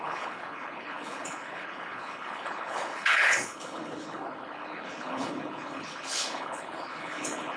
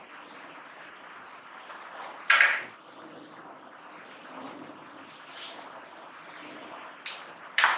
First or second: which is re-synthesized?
first